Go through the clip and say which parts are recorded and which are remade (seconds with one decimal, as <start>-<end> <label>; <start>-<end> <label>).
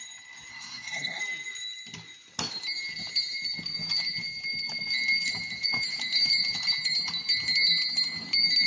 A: 0.0-0.5 recorded; 0.5-1.2 remade; 1.2-8.7 recorded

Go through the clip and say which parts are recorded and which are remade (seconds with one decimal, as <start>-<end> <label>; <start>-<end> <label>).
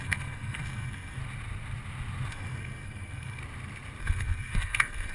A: 0.0-1.2 remade; 1.2-2.3 recorded; 2.3-3.4 remade; 3.4-4.0 recorded; 4.0-5.1 remade